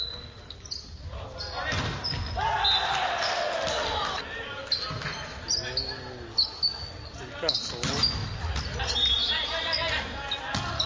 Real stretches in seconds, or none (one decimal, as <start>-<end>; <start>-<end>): 0.0-10.9